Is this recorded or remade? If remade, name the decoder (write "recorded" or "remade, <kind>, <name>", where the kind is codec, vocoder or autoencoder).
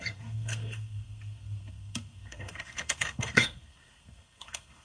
remade, codec, SNAC